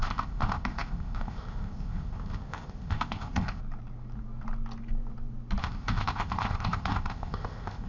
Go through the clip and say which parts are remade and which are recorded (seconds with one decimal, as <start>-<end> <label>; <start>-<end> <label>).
0.0-3.6 remade; 3.6-5.6 recorded; 5.6-7.9 remade